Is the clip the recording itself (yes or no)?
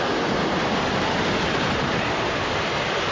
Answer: yes